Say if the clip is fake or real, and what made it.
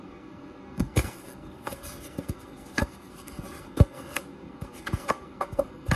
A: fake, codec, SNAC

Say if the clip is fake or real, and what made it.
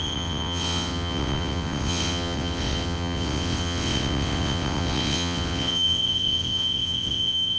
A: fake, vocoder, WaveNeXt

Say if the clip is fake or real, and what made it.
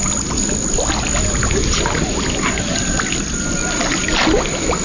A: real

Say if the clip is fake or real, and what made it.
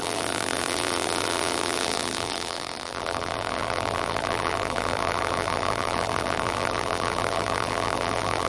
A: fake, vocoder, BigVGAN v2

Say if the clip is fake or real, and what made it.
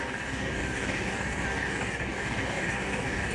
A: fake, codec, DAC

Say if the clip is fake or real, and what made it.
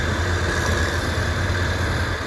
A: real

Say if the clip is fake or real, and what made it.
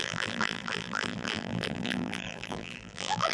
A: fake, vocoder, BigVGAN v2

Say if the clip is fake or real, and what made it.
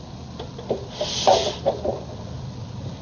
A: real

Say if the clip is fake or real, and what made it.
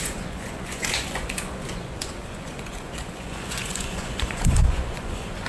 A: fake, vocoder, Vocos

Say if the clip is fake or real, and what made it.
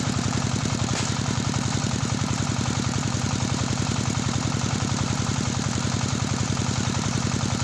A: fake, vocoder, BigVGAN v2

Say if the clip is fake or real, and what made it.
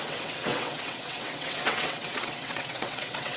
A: fake, vocoder, WaveNeXt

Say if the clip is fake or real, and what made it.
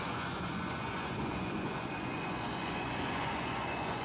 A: fake, vocoder, Vocos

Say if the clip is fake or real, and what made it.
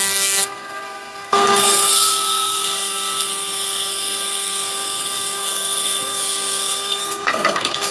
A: fake, codec, SNAC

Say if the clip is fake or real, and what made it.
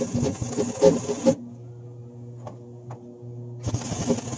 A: real